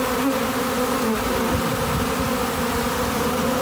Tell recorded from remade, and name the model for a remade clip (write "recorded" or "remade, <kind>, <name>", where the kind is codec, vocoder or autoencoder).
recorded